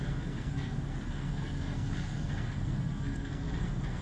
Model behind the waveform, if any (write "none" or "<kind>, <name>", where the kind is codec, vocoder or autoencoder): codec, SNAC